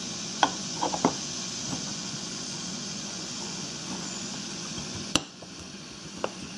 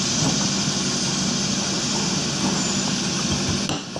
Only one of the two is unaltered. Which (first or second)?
second